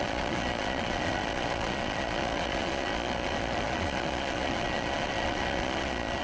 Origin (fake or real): fake